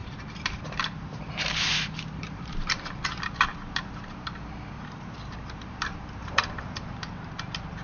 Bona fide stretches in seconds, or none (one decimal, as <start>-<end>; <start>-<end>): none